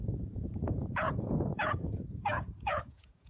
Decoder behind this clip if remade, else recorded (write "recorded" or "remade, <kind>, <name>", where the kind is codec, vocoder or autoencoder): remade, vocoder, Vocos